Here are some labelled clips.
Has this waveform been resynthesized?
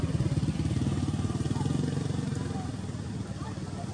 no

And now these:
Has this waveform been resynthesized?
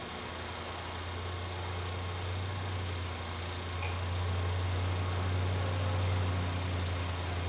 no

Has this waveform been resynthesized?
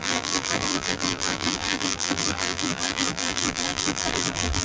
yes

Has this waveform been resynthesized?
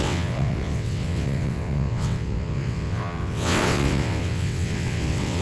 yes